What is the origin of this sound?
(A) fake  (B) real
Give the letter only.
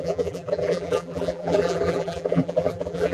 A